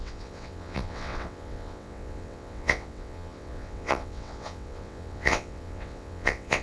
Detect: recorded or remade remade